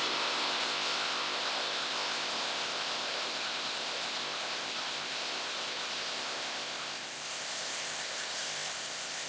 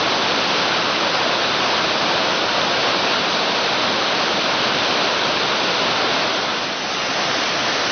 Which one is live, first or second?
second